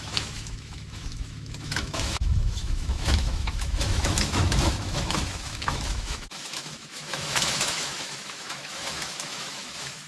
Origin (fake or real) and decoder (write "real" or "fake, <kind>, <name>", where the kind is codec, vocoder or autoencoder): fake, autoencoder, DAC-VAE